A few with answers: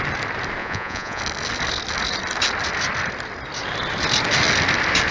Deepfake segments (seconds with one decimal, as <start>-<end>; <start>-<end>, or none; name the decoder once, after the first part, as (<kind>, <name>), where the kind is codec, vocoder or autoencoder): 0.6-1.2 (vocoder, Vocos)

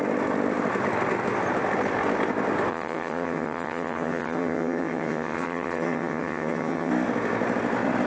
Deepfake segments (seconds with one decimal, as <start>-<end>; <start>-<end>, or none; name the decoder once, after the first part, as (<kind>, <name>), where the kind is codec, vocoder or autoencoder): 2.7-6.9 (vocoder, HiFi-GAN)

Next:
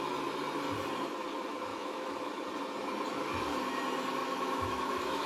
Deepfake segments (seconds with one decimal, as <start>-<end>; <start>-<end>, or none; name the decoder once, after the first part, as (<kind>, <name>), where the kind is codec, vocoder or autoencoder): 1.7-2.3 (autoencoder, DAC-VAE); 4.2-5.3